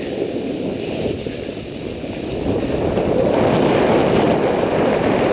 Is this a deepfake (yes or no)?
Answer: no